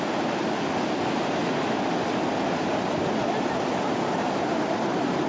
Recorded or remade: recorded